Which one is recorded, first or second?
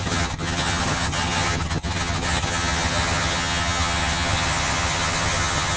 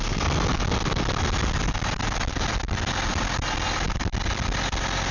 second